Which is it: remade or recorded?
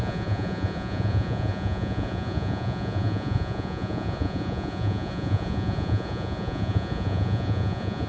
remade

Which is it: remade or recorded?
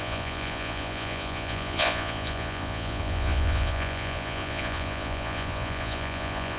remade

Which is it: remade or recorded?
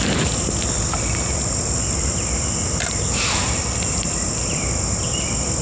recorded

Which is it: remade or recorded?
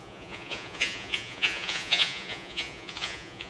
remade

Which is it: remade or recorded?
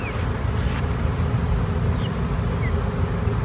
recorded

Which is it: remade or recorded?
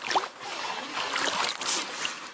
recorded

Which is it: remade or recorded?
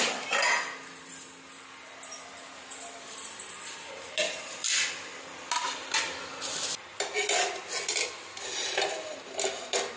recorded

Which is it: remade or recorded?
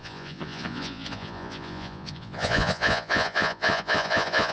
remade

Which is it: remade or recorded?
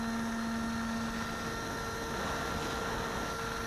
recorded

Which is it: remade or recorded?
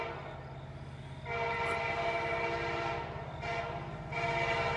recorded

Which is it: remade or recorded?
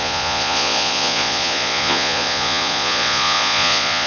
remade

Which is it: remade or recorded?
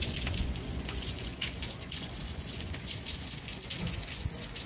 remade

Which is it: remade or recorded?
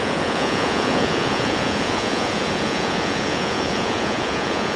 remade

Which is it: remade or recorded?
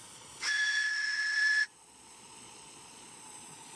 remade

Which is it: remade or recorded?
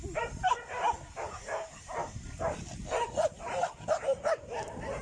recorded